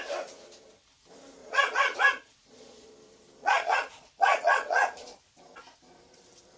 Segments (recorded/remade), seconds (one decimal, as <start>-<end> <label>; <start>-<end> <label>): 0.0-1.4 recorded; 1.4-2.9 remade; 2.9-3.4 recorded; 3.4-5.2 remade; 5.2-6.6 recorded